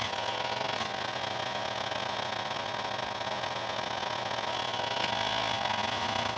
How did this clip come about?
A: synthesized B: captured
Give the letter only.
B